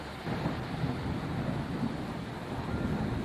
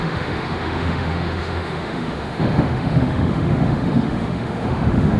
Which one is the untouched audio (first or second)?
first